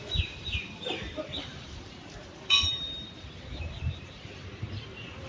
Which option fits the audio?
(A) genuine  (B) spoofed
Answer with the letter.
B